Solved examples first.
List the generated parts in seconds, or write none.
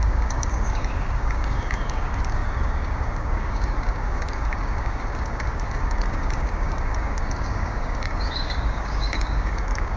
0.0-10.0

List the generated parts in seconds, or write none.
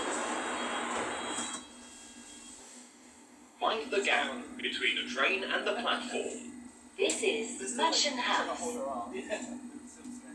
2.6-3.8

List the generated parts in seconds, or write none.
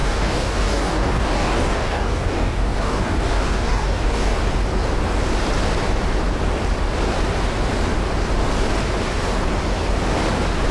0.0-4.4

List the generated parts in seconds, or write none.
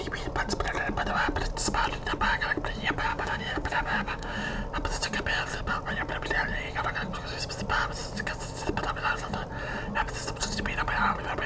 3.1-4.5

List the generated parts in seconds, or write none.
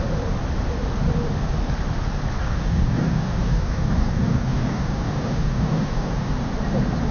2.4-6.3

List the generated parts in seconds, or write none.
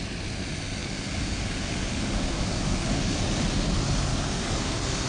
0.8-3.2; 4.1-5.1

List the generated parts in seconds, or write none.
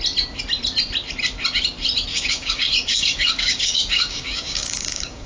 2.1-5.3